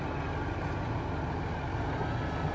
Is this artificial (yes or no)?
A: no